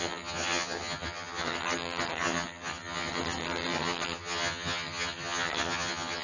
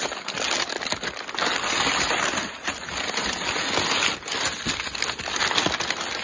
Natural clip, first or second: second